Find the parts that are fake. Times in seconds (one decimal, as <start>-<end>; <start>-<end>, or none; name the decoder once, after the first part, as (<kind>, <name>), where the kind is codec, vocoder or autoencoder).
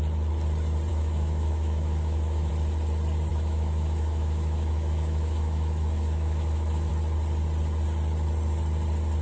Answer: 0.9-2.5 (autoencoder, DAC-VAE); 3.3-6.9